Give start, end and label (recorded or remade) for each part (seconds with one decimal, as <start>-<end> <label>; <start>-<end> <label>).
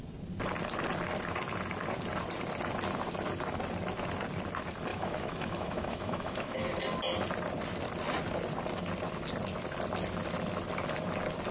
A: 0.0-4.9 recorded; 4.9-6.8 remade; 6.8-11.5 recorded